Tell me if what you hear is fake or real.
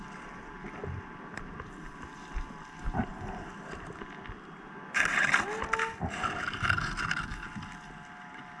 real